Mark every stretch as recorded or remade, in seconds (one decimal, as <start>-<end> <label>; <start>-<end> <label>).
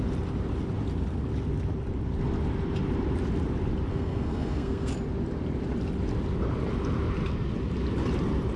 0.0-3.9 recorded; 3.9-4.9 remade; 4.9-8.6 recorded